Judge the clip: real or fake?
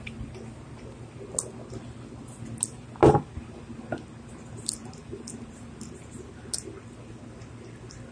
real